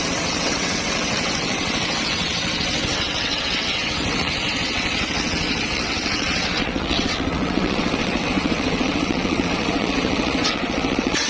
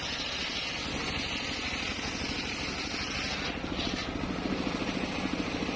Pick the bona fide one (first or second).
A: second